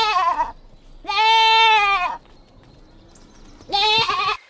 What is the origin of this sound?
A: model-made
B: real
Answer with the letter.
B